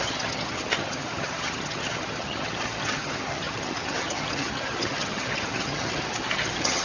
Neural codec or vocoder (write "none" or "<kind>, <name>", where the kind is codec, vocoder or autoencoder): vocoder, HiFi-GAN